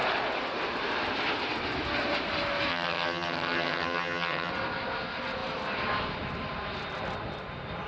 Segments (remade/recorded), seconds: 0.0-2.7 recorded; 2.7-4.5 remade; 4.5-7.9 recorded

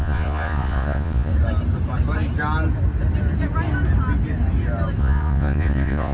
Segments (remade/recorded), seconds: 0.0-1.3 remade; 1.3-5.0 recorded; 5.0-6.1 remade

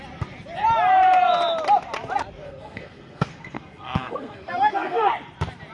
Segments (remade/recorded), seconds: 0.0-2.4 recorded; 2.4-5.1 remade; 5.1-5.7 recorded

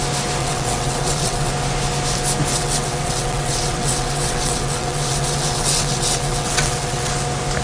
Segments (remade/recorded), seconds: 0.0-0.4 recorded; 0.4-1.5 remade; 1.5-2.5 recorded; 2.5-7.1 remade; 7.1-7.6 recorded

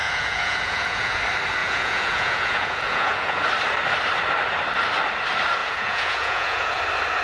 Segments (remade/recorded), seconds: 0.0-1.2 remade; 1.2-1.6 recorded; 1.6-3.4 remade; 3.4-5.6 recorded; 5.6-6.8 remade; 6.8-7.2 recorded